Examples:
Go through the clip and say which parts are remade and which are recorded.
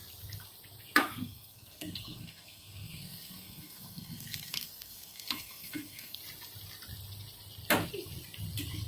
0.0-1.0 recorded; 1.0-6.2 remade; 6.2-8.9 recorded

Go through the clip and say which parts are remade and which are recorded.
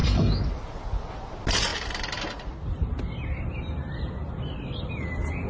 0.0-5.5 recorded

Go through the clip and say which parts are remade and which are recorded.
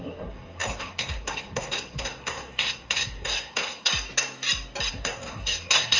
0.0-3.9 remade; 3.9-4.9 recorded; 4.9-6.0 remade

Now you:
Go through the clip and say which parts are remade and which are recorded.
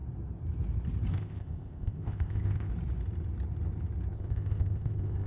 0.0-1.1 recorded; 1.1-2.7 remade; 2.7-4.1 recorded; 4.1-5.3 remade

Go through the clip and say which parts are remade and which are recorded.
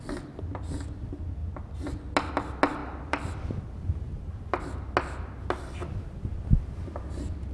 0.0-2.8 recorded; 2.8-4.4 remade; 4.4-7.5 recorded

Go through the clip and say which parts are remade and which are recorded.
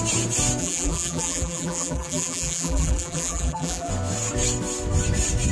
0.0-0.6 recorded; 0.6-3.9 remade; 3.9-5.5 recorded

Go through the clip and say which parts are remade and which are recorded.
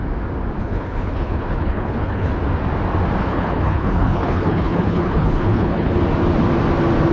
0.0-0.6 recorded; 0.6-2.4 remade; 2.4-3.2 recorded; 3.2-6.0 remade; 6.0-7.1 recorded